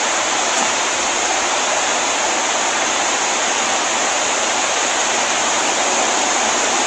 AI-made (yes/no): yes